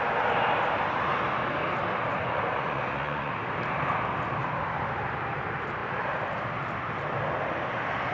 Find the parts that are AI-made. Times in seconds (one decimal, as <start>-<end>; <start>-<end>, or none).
2.1-3.3